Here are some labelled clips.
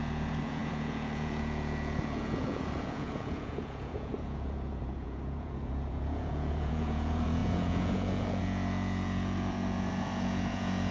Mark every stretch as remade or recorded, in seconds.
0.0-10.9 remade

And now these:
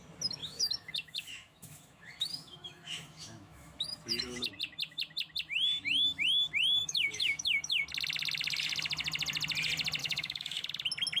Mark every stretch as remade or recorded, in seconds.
0.0-0.4 recorded; 0.4-4.5 remade; 4.5-6.8 recorded; 6.8-7.8 remade; 7.8-10.0 recorded; 10.0-10.6 remade; 10.6-11.2 recorded

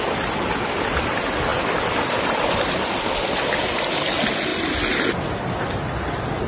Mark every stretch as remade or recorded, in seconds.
0.0-6.5 recorded

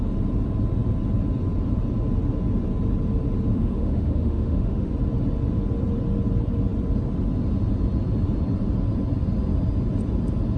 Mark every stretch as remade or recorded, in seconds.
0.0-3.5 recorded; 3.5-4.9 remade; 4.9-10.6 recorded

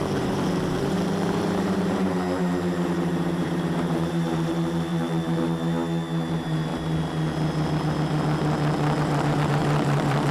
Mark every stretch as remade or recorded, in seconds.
0.0-5.4 remade; 5.4-6.3 recorded; 6.3-6.7 remade; 6.7-9.0 recorded; 9.0-10.3 remade

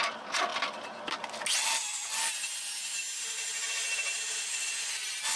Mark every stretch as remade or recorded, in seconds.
0.0-5.4 recorded